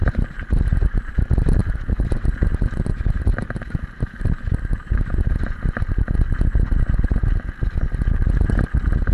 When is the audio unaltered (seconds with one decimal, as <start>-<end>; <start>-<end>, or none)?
1.1-1.6; 2.3-3.3; 6.9-9.1